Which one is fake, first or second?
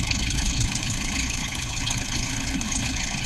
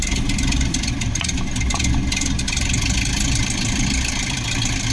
first